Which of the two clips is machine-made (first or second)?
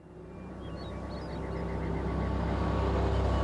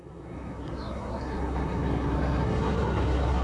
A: second